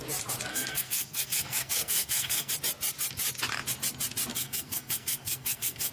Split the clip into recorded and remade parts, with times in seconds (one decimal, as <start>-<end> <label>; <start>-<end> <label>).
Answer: 0.0-0.5 recorded; 0.5-2.5 remade; 2.5-4.3 recorded; 4.3-5.9 remade